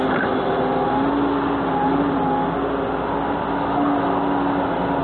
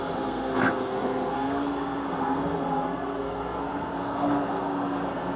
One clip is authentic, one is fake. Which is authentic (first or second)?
first